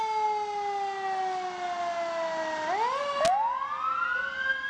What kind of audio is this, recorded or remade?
recorded